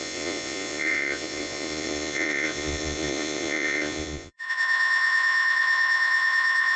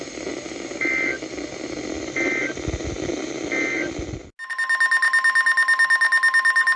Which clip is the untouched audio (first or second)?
second